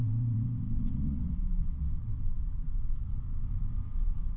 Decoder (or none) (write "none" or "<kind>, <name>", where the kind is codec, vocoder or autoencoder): vocoder, WaveNeXt